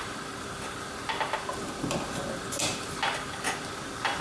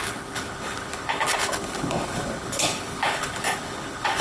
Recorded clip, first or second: first